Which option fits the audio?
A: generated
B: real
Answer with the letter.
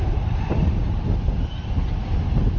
B